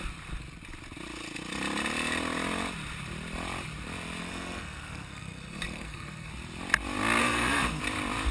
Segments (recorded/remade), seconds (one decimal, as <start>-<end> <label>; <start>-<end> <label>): 0.0-4.2 recorded; 4.2-6.3 remade; 6.3-7.2 recorded; 7.2-7.8 remade; 7.8-8.3 recorded